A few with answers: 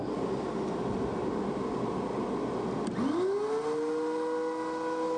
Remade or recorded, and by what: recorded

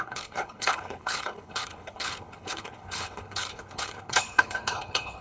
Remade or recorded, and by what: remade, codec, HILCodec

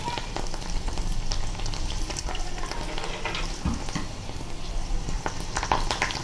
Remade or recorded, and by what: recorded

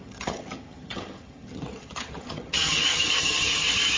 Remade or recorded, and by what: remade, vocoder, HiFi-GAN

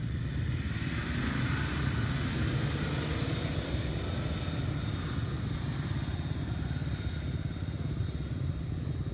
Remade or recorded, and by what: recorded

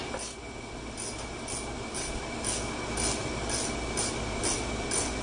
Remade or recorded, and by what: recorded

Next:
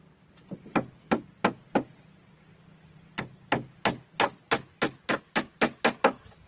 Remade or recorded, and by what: recorded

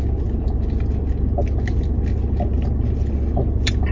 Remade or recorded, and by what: recorded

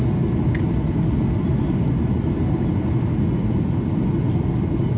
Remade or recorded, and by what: recorded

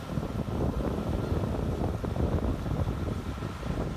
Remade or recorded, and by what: recorded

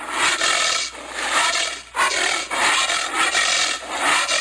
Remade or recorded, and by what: recorded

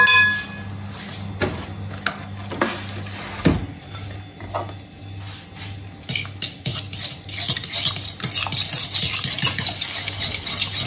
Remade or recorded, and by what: recorded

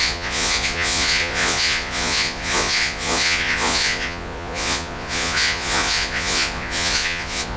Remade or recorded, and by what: remade, vocoder, Vocos